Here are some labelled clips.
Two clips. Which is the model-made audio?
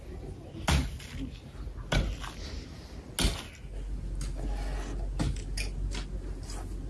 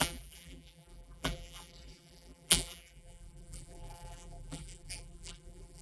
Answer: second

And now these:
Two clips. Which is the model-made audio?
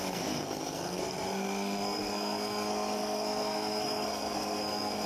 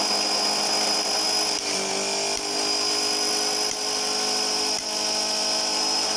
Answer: first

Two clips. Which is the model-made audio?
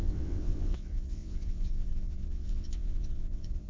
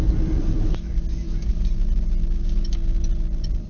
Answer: first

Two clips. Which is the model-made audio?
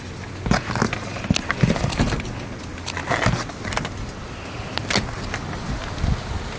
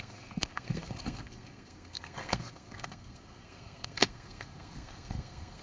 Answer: second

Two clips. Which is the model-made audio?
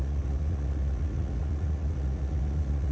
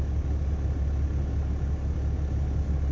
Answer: first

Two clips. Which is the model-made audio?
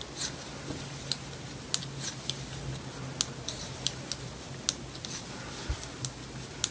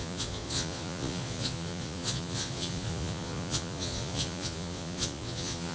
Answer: second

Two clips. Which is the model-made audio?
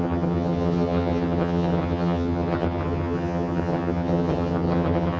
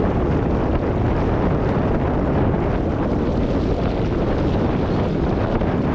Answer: first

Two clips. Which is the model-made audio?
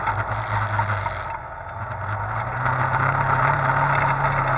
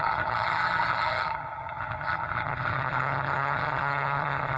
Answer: second